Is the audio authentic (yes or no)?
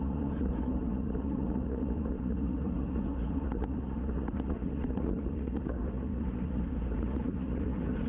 no